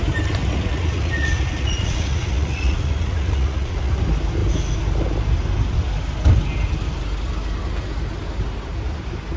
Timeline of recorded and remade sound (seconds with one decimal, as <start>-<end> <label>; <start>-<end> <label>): 0.0-0.4 recorded; 0.4-4.0 remade; 4.0-9.4 recorded